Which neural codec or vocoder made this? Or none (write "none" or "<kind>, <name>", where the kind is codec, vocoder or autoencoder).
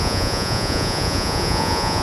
vocoder, Vocos